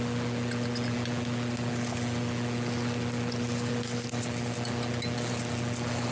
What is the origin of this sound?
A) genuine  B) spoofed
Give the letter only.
A